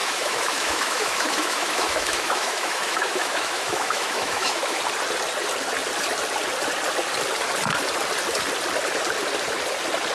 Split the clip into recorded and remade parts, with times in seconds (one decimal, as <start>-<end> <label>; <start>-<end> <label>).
0.0-4.8 remade; 4.8-10.1 recorded